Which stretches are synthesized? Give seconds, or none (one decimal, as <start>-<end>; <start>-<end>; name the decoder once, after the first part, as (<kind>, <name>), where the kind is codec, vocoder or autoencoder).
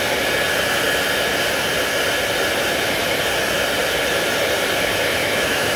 5.2-5.8 (autoencoder, DAC-VAE)